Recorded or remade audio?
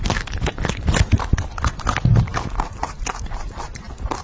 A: recorded